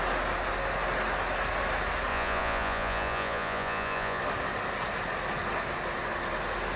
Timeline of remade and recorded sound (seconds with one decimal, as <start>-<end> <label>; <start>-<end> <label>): 0.0-2.1 recorded; 2.1-4.2 remade; 4.2-6.8 recorded